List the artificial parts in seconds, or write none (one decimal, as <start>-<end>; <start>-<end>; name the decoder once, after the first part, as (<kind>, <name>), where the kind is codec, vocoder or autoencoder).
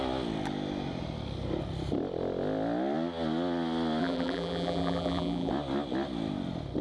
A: 4.0-5.5 (vocoder, BigVGAN v2)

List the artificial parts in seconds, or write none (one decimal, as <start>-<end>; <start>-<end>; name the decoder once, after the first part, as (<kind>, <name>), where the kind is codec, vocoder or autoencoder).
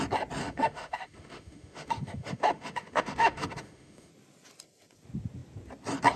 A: 0.4-4.1 (autoencoder, DAC-VAE)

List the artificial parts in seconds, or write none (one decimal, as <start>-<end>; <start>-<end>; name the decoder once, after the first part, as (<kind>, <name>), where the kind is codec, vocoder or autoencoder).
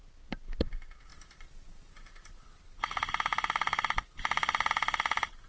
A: 1.1-2.6 (vocoder, BigVGAN v2); 3.3-4.7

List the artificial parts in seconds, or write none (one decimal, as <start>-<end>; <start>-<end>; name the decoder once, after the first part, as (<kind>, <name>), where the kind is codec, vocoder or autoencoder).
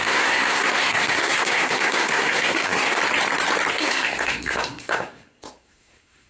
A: 0.0-3.0 (codec, SNAC); 3.7-6.3